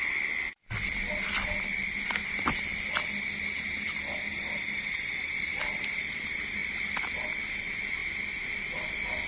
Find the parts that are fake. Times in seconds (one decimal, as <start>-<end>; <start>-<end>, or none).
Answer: none